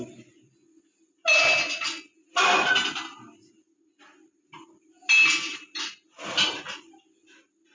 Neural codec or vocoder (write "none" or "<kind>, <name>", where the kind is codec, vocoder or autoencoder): none